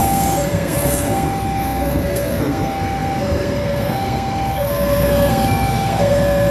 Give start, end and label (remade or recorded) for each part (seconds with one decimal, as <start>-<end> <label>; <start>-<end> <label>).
0.0-6.5 remade